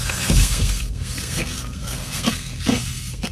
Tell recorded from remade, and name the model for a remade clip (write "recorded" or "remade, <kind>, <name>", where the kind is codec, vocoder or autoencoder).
remade, codec, SNAC